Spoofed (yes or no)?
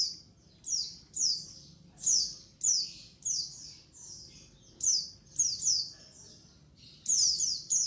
no